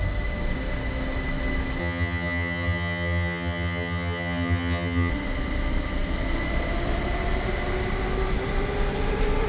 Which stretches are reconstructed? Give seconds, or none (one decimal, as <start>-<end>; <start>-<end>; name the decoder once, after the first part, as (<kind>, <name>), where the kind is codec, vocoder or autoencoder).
1.8-5.1 (vocoder, HiFi-GAN)